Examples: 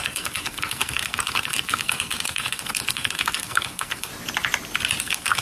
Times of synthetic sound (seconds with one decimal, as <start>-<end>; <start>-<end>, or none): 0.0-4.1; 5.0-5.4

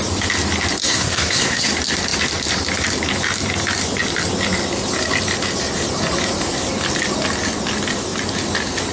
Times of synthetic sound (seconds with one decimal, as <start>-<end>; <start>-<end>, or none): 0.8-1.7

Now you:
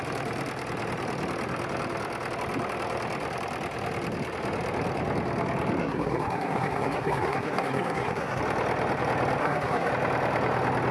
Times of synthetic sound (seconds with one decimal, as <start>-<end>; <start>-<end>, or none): 5.8-8.4; 9.4-9.9